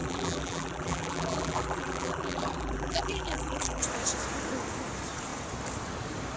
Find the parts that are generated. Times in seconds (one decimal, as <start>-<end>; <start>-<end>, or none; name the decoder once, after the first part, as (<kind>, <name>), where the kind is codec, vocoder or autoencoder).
0.0-3.8 (vocoder, BigVGAN v2)